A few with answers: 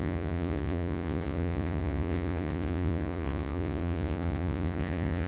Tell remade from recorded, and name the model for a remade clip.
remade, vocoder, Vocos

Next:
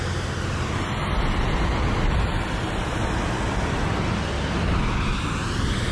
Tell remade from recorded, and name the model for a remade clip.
recorded